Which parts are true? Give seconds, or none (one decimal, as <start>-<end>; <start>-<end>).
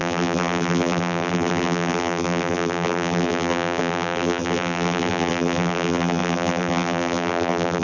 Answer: none